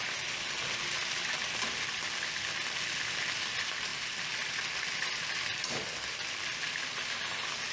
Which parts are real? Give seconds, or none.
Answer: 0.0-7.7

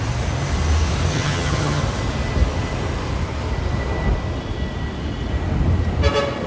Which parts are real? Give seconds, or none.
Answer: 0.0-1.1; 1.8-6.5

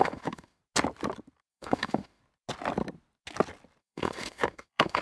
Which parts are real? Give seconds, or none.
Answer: 0.6-1.5; 2.2-3.8

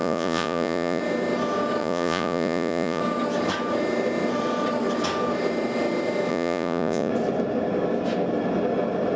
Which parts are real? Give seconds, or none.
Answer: 1.0-1.8; 3.0-6.3; 7.1-9.2

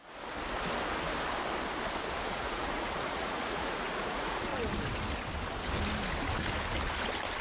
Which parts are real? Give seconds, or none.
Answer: 0.0-2.3; 4.5-7.4

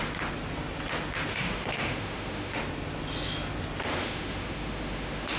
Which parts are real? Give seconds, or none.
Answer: 0.0-1.3; 2.6-4.0

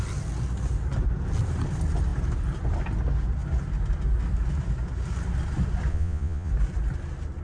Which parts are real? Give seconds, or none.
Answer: 0.0-5.9; 6.5-7.4

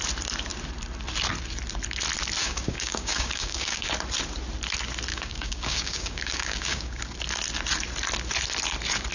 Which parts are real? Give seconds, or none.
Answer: 0.0-2.4; 3.9-5.1; 7.0-9.1